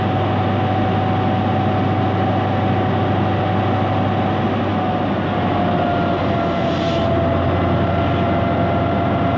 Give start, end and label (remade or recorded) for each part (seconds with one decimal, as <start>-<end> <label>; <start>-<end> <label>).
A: 0.0-9.4 recorded